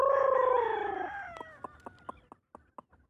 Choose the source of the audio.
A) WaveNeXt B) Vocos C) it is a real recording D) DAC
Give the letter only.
C